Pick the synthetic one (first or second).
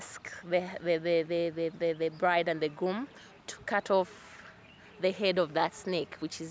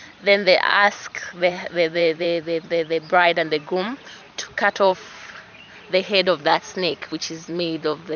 second